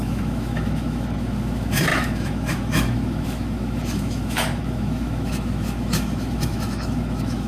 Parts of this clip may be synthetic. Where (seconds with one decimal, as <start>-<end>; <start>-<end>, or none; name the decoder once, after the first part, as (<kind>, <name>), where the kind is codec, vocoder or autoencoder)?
0.0-7.5 (autoencoder, DAC-VAE)